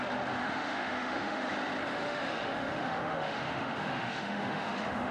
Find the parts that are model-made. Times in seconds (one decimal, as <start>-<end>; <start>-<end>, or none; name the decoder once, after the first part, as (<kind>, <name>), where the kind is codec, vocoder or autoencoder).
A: 0.4-1.5 (autoencoder, DAC-VAE); 1.9-5.1

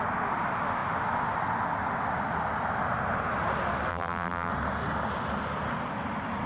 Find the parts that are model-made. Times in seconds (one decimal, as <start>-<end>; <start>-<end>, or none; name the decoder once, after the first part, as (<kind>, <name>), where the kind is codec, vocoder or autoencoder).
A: 3.9-4.5 (vocoder, BigVGAN v2)

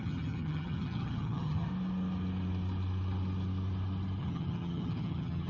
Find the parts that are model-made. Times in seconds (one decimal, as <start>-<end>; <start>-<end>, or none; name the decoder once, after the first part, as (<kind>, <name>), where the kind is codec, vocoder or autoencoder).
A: 0.0-1.7 (vocoder, HiFi-GAN); 4.2-5.5

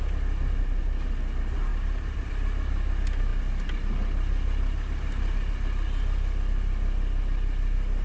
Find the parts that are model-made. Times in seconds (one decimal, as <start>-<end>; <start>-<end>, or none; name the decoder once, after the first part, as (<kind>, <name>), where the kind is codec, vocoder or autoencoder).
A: none

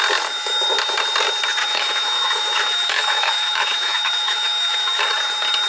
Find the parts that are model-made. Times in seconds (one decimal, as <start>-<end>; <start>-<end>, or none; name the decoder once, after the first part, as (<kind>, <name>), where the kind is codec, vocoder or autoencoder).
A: 1.6-5.0 (autoencoder, DAC-VAE)

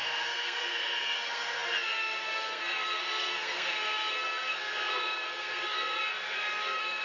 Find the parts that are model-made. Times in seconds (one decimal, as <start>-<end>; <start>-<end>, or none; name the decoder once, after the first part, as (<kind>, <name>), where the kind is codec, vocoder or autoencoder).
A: 0.0-7.0 (codec, SNAC)

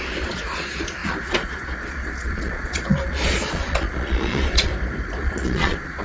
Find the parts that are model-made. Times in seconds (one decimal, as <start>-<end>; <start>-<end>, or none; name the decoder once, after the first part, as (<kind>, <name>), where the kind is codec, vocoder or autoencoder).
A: 0.0-4.7 (vocoder, Vocos); 5.2-6.0